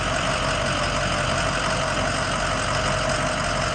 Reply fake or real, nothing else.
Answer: real